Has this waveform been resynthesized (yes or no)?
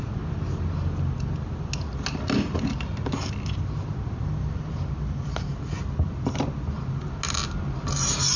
no